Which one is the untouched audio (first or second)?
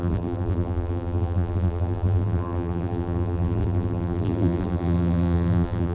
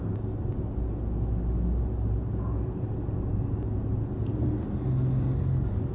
second